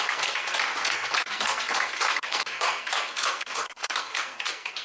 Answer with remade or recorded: remade